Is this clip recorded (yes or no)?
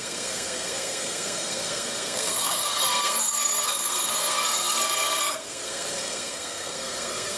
no